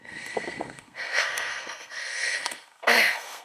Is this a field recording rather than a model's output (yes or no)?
no